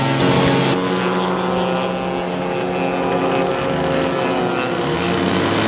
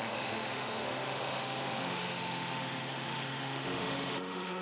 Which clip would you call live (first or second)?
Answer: first